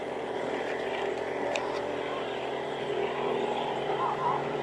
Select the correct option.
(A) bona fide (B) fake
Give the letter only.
B